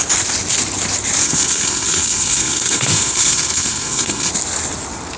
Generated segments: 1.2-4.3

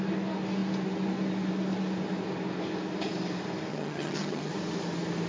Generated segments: 3.7-4.5